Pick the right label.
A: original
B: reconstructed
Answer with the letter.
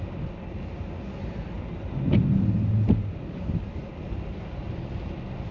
A